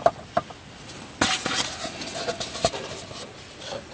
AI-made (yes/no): no